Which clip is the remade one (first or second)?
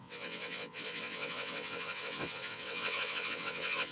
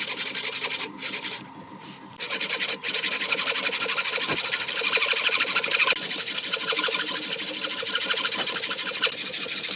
first